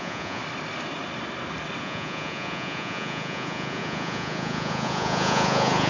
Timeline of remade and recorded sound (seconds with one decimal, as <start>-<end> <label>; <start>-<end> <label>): 0.0-0.4 remade; 0.4-1.8 recorded; 1.8-5.9 remade